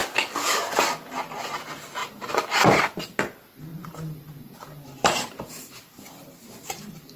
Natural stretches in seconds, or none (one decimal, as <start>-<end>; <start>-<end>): 0.0-2.0; 2.8-3.7